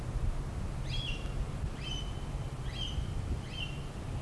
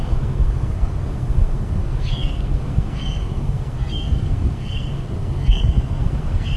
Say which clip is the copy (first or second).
second